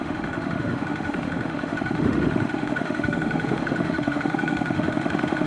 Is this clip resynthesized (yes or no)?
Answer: yes